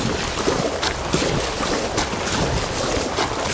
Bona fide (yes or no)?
yes